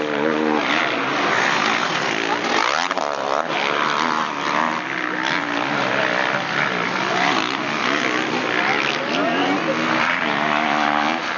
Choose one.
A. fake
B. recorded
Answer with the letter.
B